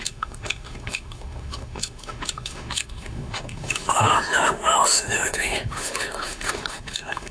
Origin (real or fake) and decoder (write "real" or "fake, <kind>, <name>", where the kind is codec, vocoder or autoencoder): fake, autoencoder, DAC-VAE